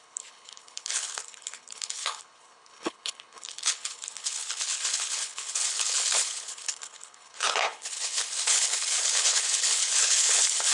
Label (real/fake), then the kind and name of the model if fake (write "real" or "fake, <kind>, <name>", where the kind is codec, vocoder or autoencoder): fake, codec, HILCodec